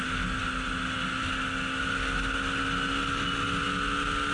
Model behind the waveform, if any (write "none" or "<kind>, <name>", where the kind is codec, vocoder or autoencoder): none